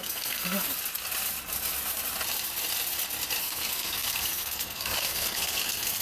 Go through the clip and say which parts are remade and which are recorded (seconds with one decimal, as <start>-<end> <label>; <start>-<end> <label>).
0.0-0.7 remade; 0.7-3.4 recorded; 3.4-6.0 remade